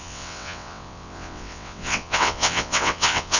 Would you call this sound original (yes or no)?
no